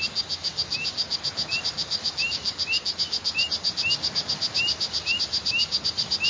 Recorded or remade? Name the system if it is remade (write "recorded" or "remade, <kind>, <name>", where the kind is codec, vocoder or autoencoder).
recorded